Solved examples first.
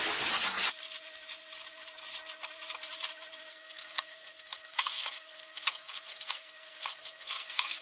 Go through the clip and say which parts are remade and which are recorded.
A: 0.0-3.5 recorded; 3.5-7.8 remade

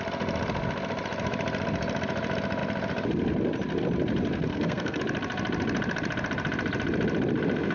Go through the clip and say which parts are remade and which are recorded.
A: 0.0-4.5 recorded; 4.5-5.0 remade; 5.0-7.7 recorded

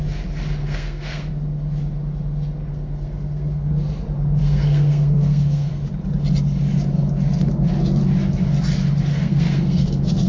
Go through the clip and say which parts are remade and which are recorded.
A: 0.0-0.6 recorded; 0.6-1.3 remade; 1.3-2.7 recorded; 2.7-3.7 remade; 3.7-4.4 recorded; 4.4-5.7 remade; 5.7-9.1 recorded; 9.1-10.3 remade

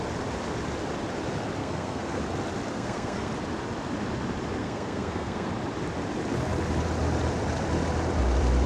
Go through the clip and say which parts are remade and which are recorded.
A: 0.0-1.6 recorded; 1.6-2.2 remade; 2.2-2.7 recorded; 2.7-3.3 remade; 3.3-4.6 recorded; 4.6-5.5 remade; 5.5-8.7 recorded

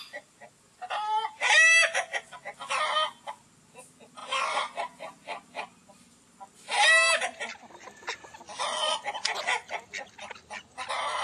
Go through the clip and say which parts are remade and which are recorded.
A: 0.0-11.2 recorded